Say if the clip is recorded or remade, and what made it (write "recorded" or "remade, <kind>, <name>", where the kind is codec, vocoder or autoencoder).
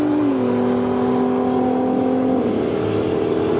recorded